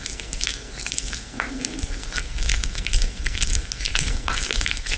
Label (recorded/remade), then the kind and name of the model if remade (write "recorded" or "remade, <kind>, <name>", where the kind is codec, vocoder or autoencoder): remade, codec, SNAC